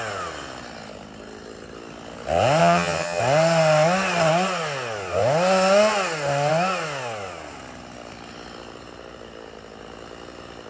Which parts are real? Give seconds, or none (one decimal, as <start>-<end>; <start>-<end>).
0.0-2.6; 3.2-10.7